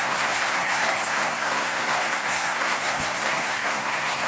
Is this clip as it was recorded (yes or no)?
no